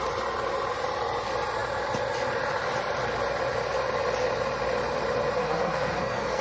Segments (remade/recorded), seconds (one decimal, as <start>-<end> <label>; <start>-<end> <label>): 0.0-5.4 recorded; 5.4-6.4 remade